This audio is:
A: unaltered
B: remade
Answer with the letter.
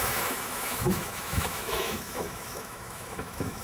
B